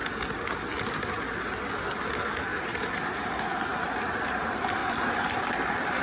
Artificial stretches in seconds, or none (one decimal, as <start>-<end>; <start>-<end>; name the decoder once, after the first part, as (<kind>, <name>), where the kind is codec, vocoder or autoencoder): 2.5-3.3 (vocoder, BigVGAN v2); 4.8-6.0

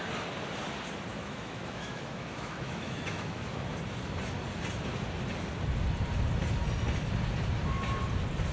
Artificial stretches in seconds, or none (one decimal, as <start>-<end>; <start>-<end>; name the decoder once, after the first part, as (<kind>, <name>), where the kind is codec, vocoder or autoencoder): 1.1-3.6 (autoencoder, DAC-VAE)

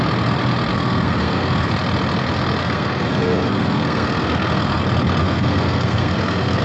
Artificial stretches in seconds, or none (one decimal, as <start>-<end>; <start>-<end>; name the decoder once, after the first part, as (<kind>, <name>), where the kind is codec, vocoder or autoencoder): 0.7-1.7 (codec, SNAC); 2.6-4.8; 5.2-6.6

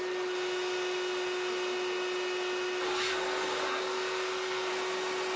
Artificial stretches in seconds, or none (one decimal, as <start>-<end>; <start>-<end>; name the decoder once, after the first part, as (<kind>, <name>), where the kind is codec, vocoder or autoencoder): 3.1-4.7 (codec, SNAC)

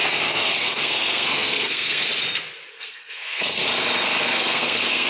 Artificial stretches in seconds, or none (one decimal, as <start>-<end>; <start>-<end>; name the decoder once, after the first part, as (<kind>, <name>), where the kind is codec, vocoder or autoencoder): 0.0-2.0 (codec, SNAC); 2.7-3.6; 4.2-5.1